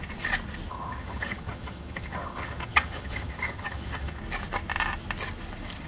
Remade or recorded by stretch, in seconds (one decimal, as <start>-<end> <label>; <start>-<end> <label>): 0.0-0.7 recorded; 0.7-4.2 remade; 4.2-5.9 recorded